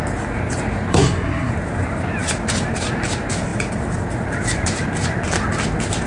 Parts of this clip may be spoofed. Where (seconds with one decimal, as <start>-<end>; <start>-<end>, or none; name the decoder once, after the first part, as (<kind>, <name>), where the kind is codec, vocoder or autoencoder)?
0.9-1.5 (codec, SNAC)